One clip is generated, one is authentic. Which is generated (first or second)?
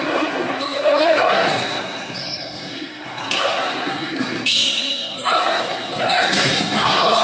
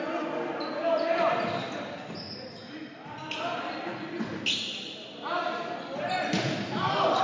first